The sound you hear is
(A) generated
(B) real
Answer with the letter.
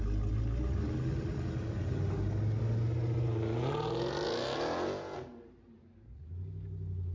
B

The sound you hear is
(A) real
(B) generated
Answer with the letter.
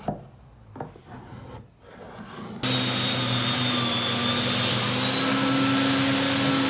A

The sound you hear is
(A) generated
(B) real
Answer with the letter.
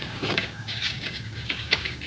A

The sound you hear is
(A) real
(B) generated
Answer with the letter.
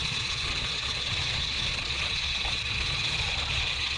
B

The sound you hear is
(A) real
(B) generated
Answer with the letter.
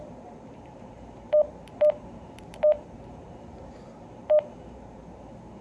B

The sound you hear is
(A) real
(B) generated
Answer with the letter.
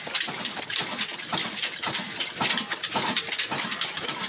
A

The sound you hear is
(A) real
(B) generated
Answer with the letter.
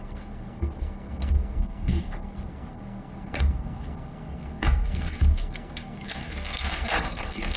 B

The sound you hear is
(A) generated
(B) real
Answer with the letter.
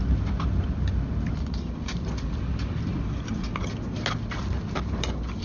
B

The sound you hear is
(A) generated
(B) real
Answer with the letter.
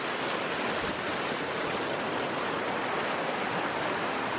B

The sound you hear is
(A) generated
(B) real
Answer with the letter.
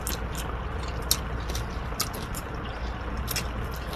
B